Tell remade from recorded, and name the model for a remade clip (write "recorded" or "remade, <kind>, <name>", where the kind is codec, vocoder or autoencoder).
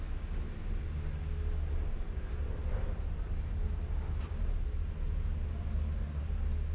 recorded